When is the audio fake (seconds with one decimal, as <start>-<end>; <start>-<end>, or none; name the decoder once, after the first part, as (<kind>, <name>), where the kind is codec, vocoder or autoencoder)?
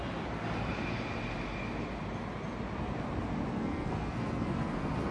3.5-5.1 (codec, SNAC)